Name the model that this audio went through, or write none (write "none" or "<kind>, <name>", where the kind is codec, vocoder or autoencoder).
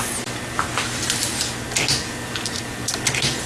none